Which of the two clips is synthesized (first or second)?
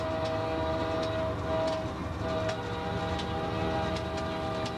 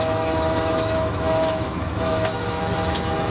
second